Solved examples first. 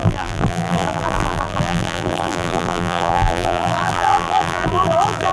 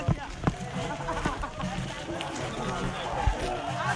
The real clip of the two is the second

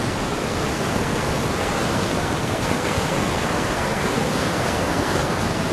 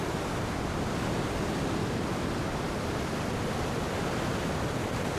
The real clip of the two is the second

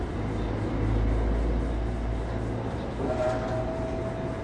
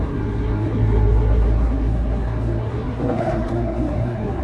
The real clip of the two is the first